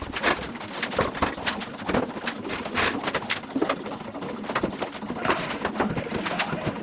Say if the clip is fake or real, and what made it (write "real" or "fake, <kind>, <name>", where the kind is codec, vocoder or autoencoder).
real